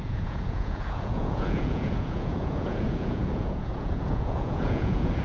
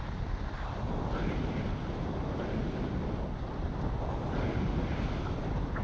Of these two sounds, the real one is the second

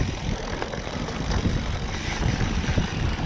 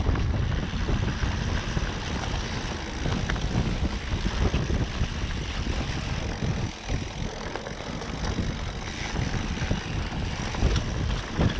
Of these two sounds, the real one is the second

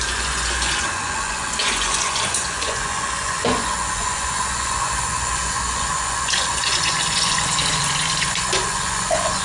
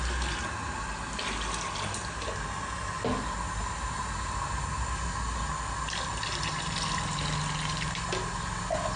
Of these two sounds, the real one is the second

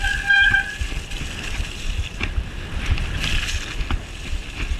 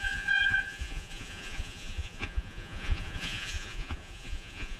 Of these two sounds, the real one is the first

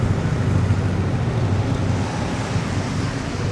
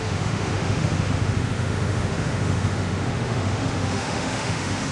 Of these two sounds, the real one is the first